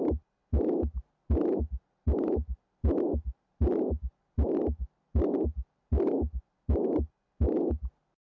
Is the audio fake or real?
real